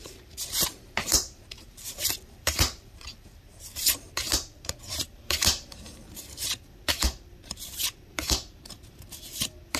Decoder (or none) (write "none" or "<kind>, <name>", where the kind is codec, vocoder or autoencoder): vocoder, BigVGAN v2